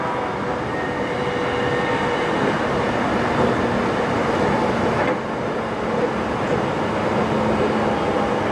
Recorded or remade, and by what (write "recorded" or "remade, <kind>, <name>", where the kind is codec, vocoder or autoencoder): recorded